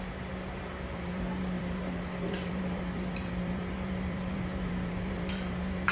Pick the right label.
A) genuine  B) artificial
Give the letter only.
B